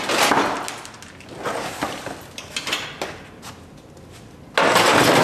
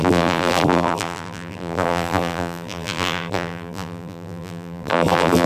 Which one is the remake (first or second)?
second